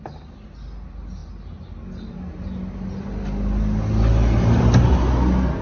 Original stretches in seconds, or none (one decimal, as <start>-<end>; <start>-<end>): 0.0-5.6